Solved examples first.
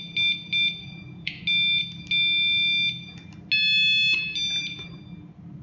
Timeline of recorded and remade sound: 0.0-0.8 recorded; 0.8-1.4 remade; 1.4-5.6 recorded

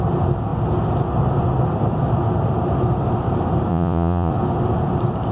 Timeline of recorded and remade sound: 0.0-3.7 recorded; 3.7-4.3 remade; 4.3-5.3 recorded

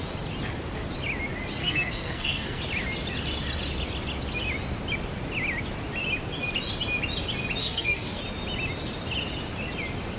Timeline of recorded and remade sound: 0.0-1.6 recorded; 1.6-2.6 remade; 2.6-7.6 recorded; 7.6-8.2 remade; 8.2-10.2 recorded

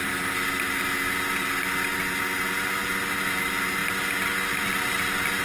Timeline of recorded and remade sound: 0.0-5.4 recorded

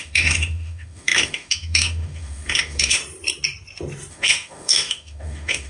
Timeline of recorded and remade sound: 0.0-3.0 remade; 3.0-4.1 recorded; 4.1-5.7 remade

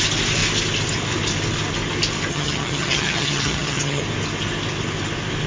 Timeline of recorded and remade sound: 0.0-2.3 recorded; 2.3-4.0 remade; 4.0-5.5 recorded

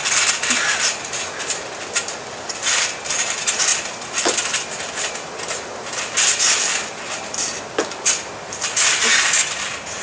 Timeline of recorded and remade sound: 0.0-10.0 recorded

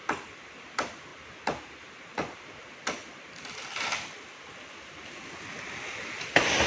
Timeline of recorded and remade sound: 0.0-0.7 remade; 0.7-6.7 recorded